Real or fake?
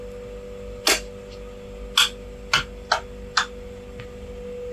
real